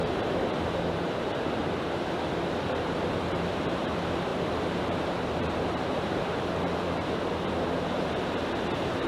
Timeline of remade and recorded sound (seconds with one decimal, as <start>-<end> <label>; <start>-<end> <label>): 0.0-1.6 remade; 1.6-2.7 recorded; 2.7-9.1 remade